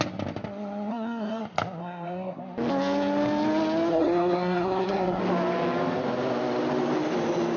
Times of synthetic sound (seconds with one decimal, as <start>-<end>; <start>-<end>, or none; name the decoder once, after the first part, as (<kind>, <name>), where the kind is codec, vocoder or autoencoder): 0.9-1.4 (codec, SNAC); 1.8-2.4; 3.9-5.2